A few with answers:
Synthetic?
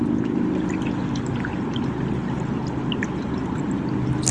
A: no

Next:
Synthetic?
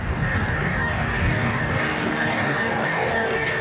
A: yes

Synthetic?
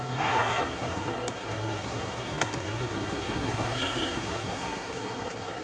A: yes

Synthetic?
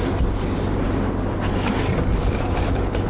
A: no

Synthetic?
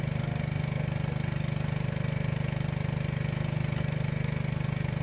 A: no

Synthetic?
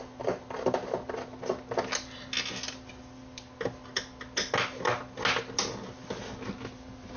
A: no